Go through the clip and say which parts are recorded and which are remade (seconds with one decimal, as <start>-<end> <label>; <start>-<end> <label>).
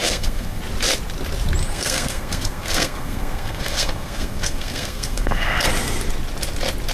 0.0-0.6 remade; 0.6-1.6 recorded; 1.6-5.7 remade; 5.7-6.9 recorded